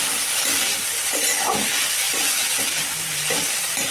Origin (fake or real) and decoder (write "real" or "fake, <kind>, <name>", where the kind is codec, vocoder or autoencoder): real